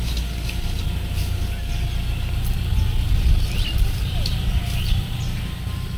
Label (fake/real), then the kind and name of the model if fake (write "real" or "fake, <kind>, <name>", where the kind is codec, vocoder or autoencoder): real